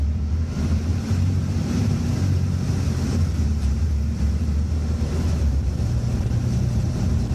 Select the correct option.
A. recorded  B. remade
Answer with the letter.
B